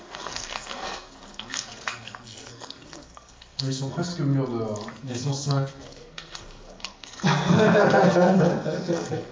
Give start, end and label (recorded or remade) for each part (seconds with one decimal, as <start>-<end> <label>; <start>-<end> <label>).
0.0-4.1 remade; 4.1-4.9 recorded; 4.9-9.3 remade